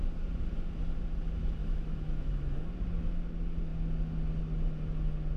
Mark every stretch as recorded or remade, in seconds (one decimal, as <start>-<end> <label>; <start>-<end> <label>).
0.0-1.6 recorded; 1.6-2.7 remade; 2.7-5.4 recorded